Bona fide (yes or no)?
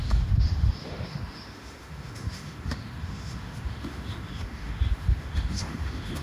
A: no